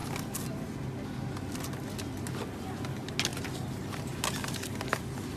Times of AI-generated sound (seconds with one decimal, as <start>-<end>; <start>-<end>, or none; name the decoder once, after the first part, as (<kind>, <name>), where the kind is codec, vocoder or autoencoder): none

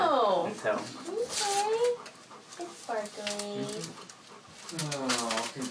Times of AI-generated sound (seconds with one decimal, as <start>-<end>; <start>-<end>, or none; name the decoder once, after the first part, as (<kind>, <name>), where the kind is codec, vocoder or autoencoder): none

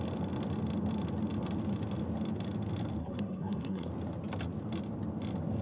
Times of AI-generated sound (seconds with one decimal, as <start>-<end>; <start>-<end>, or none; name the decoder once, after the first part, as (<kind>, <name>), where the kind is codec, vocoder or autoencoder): 3.0-3.9 (codec, SNAC)

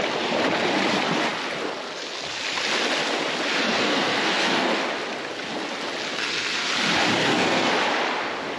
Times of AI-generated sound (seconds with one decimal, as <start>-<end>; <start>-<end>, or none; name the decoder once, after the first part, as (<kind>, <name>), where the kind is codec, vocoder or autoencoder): 3.6-4.8 (codec, SNAC); 6.1-6.7; 7.2-7.7

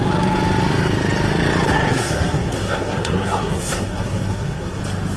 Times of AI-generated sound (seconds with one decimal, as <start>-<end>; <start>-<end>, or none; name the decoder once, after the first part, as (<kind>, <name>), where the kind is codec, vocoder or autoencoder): 1.7-4.8 (codec, SNAC)

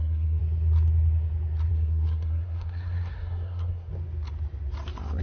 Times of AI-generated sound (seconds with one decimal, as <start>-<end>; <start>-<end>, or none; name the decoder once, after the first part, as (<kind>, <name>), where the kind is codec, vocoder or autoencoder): 0.0-0.4 (codec, SNAC); 1.7-3.9

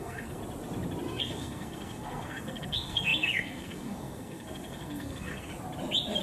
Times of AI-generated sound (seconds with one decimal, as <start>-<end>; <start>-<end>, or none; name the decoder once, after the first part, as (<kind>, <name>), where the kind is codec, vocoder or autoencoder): 0.0-0.4 (codec, SNAC); 1.2-5.5